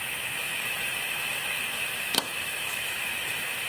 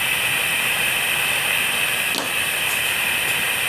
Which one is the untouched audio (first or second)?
second